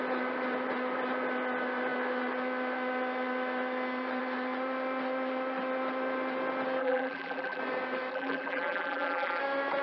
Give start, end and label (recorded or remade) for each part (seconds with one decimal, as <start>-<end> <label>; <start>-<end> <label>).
0.0-6.8 recorded; 6.8-7.6 remade; 7.6-8.1 recorded; 8.1-9.4 remade; 9.4-9.8 recorded